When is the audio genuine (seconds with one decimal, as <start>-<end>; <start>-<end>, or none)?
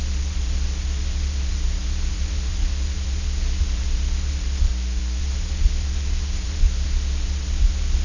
4.7-5.2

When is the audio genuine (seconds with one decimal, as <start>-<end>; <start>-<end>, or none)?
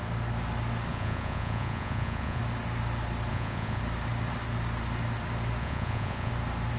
0.0-0.9; 2.4-3.3; 3.8-5.6; 6.3-6.8